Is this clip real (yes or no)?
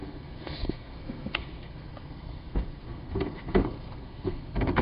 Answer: no